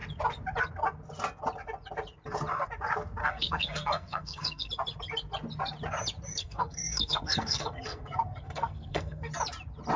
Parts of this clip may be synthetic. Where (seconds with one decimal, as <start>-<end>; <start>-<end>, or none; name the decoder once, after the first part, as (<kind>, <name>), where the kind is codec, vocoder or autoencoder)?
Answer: 3.2-4.7 (codec, SNAC); 6.3-9.3

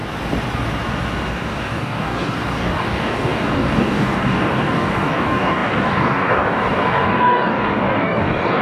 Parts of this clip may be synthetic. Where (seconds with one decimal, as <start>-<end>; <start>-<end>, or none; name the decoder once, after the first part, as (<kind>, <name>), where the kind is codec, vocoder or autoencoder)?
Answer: 1.3-8.6 (codec, DAC)

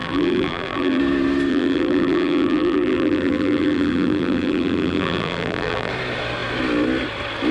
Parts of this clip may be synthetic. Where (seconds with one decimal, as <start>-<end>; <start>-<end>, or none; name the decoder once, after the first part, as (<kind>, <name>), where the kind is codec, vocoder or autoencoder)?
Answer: 0.0-1.0 (vocoder, BigVGAN v2); 1.5-5.9

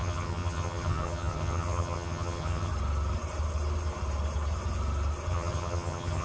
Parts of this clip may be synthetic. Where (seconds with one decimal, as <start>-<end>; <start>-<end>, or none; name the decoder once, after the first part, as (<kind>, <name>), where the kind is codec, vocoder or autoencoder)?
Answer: 0.0-2.7 (vocoder, HiFi-GAN); 5.3-6.2